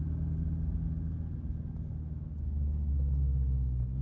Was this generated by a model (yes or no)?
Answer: no